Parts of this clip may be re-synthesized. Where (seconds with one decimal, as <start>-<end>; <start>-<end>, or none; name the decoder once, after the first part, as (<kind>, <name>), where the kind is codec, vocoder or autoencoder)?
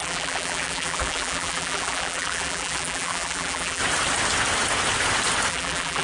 0.0-3.8 (vocoder, BigVGAN v2); 5.5-6.0